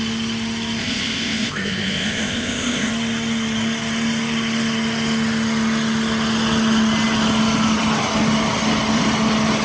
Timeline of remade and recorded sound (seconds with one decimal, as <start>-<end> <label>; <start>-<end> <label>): 0.0-0.8 recorded; 0.8-2.9 remade; 2.9-9.6 recorded